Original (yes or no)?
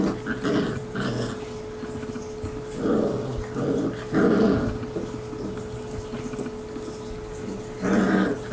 yes